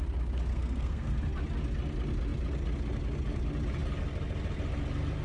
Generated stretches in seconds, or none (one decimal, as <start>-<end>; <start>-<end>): 0.5-1.2